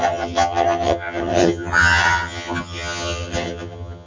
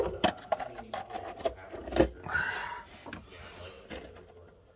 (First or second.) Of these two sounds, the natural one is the second